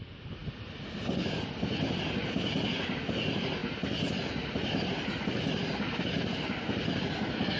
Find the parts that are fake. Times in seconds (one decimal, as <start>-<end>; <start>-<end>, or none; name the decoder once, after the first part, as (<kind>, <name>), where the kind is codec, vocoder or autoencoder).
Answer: none